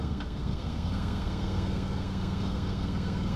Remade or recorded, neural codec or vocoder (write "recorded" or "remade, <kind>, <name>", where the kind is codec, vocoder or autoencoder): remade, codec, SNAC